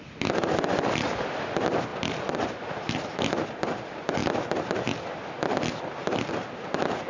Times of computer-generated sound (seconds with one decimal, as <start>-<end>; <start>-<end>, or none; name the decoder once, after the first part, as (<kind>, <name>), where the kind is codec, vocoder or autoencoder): 1.9-3.2 (vocoder, BigVGAN v2)

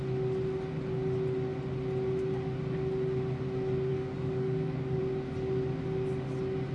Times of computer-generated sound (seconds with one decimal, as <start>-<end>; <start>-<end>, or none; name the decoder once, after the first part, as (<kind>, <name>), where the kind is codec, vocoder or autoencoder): 3.9-5.0 (codec, DAC)